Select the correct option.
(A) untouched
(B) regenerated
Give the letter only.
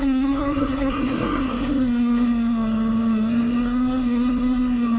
B